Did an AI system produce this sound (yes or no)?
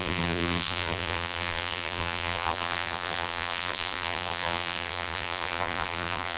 yes